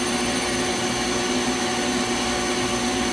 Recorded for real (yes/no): yes